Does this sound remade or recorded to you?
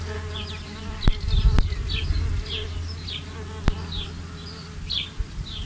recorded